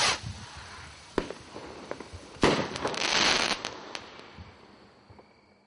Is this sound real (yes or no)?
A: yes